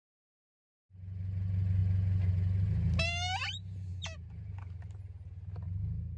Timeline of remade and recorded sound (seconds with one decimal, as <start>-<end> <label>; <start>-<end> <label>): 0.0-6.2 recorded